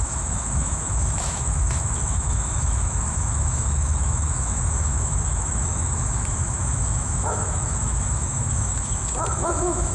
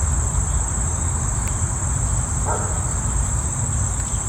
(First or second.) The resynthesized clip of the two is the first